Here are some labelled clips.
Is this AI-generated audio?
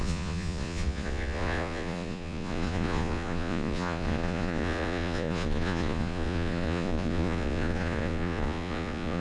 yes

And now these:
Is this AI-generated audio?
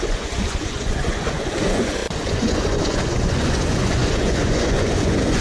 yes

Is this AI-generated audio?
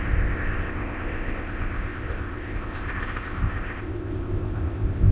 yes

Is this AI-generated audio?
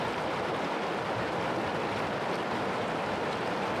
no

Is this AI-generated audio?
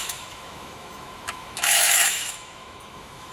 yes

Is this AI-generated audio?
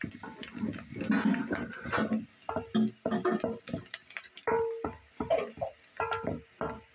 no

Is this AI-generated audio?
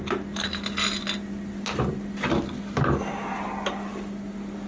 no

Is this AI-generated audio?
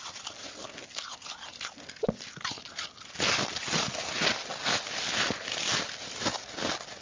no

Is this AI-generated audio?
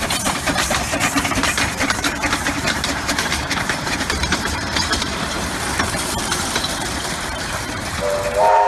yes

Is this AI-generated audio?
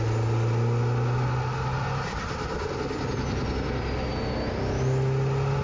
no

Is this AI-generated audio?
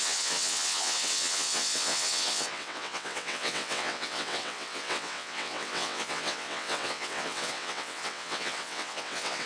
yes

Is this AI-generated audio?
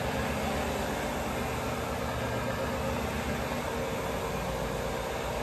no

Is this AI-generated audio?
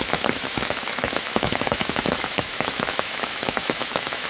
yes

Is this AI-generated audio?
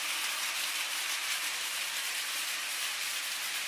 yes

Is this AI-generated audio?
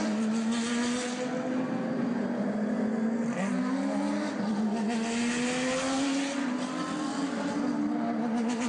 no